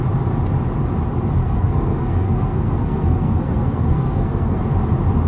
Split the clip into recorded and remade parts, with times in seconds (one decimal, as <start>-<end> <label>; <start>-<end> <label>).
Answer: 0.0-1.4 recorded; 1.4-4.6 remade; 4.6-5.3 recorded